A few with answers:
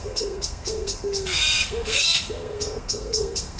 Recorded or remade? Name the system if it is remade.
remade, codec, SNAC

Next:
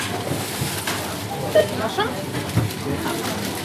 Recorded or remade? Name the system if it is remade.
recorded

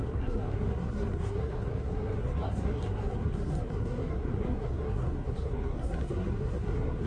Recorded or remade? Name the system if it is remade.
remade, codec, SNAC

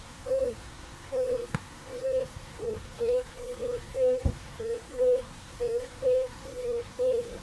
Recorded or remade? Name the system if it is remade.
remade, codec, SNAC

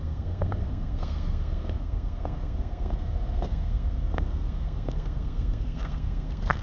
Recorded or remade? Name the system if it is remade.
remade, codec, SNAC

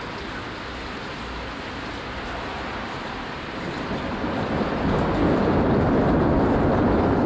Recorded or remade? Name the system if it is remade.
recorded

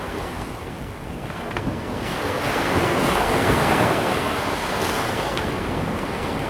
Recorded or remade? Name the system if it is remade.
remade, codec, SNAC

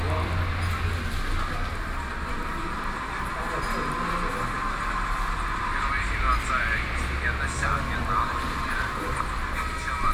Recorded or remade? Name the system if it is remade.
recorded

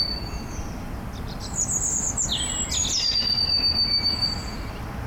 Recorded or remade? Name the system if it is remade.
recorded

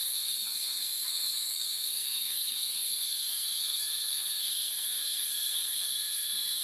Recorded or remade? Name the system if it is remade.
remade, codec, SNAC